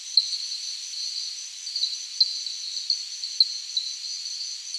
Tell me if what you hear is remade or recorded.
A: recorded